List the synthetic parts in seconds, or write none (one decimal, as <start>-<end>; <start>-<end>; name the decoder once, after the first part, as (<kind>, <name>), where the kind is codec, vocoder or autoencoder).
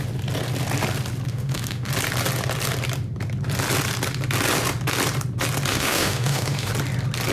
1.3-1.9 (autoencoder, DAC-VAE); 5.7-6.7